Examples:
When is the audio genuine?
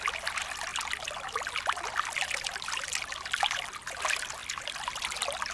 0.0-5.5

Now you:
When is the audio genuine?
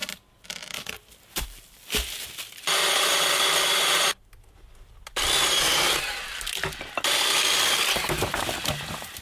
0.0-3.7; 4.2-9.2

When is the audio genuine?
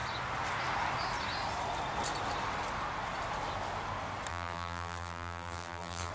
0.0-4.3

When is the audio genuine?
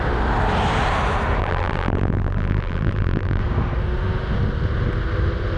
0.0-1.4; 3.4-5.6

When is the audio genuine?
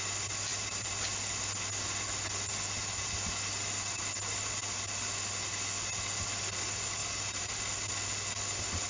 0.0-0.5; 1.1-7.0; 7.6-8.9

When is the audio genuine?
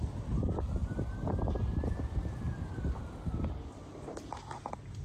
0.0-0.8; 3.0-5.0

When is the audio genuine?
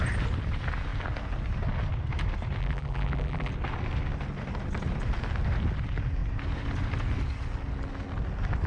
0.0-2.6; 3.5-8.7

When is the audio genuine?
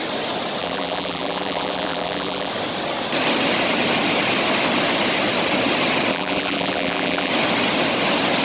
0.0-0.6; 2.5-6.1; 7.3-8.4